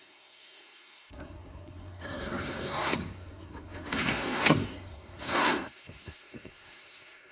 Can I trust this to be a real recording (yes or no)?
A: no